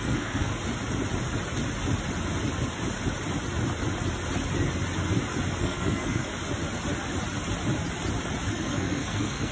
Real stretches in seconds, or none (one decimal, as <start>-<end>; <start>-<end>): 0.5-5.6; 6.3-8.5